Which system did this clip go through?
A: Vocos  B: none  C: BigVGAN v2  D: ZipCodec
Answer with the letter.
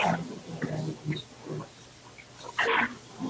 B